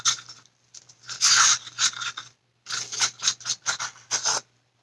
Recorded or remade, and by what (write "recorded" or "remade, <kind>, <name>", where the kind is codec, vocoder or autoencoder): recorded